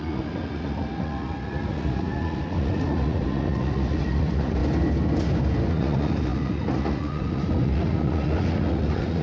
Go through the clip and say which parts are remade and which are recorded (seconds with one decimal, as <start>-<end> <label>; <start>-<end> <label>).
0.0-4.6 remade; 4.6-5.7 recorded; 5.7-9.2 remade